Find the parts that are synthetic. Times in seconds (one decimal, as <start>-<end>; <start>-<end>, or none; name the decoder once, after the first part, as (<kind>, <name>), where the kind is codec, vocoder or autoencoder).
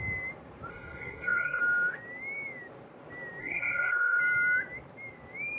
0.7-1.6 (codec, SNAC); 3.4-4.2